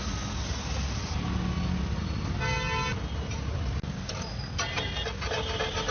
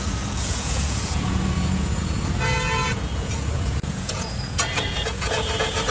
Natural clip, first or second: first